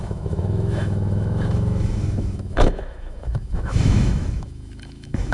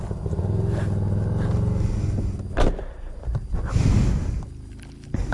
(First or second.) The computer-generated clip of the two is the first